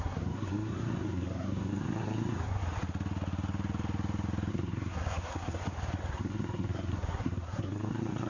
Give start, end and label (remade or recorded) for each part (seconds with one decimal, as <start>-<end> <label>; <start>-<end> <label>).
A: 0.0-2.6 remade; 2.6-4.5 recorded; 4.5-5.6 remade; 5.6-6.1 recorded; 6.1-8.3 remade